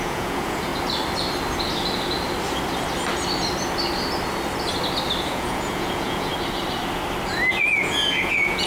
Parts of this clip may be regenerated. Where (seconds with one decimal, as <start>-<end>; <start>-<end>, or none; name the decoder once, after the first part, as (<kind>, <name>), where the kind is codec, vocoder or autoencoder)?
0.0-0.7 (vocoder, Vocos); 5.2-6.3; 7.5-8.7